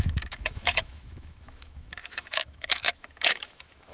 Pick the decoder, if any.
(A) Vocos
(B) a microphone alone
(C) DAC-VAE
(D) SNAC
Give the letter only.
C